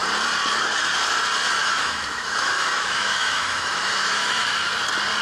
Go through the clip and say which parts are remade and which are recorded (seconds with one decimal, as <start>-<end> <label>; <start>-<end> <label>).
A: 0.0-1.6 recorded; 1.6-4.7 remade; 4.7-5.2 recorded